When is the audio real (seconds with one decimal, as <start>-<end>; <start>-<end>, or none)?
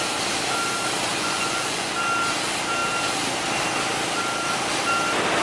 0.0-1.1; 1.9-5.4